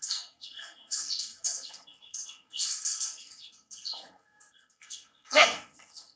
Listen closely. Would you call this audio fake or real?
fake